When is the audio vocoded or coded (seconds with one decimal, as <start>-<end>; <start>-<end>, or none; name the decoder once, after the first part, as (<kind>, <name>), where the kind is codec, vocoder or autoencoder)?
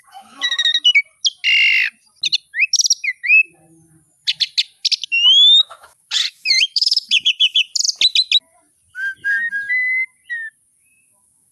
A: 0.0-0.7 (autoencoder, DAC-VAE); 5.1-7.7; 10.8-11.5